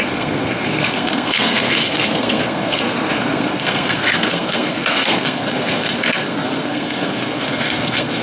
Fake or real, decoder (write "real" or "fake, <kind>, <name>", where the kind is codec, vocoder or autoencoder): fake, codec, SNAC